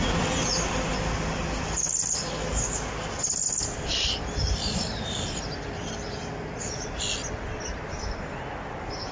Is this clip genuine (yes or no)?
yes